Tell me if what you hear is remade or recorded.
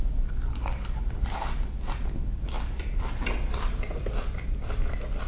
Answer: remade